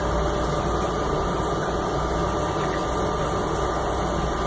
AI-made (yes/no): no